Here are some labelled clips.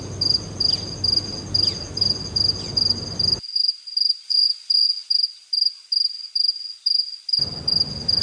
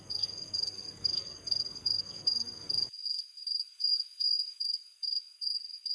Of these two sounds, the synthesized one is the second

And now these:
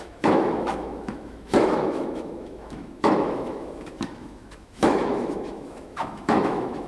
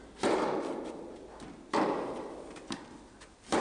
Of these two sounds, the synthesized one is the first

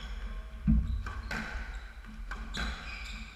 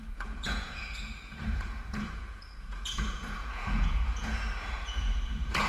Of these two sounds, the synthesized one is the second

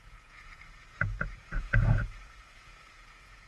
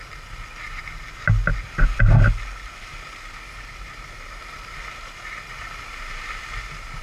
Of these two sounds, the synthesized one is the first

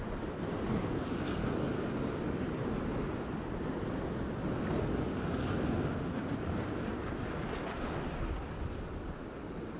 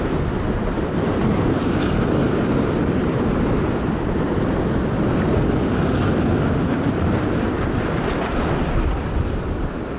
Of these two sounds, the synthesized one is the second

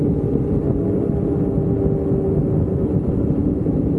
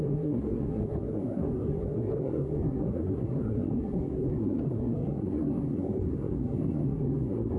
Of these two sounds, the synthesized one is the second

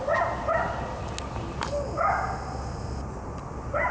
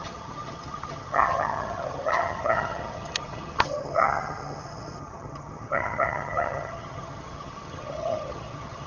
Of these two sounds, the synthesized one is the second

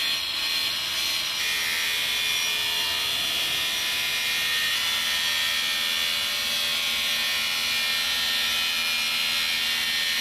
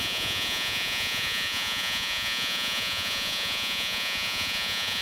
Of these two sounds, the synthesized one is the second